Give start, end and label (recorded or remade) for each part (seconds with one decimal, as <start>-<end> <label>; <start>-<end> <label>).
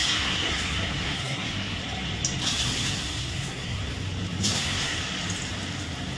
0.0-1.8 remade; 1.8-2.4 recorded; 2.4-3.8 remade; 3.8-4.4 recorded; 4.4-5.0 remade; 5.0-6.2 recorded